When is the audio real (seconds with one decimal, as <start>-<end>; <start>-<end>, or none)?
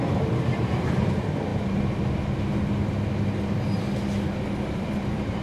1.5-4.7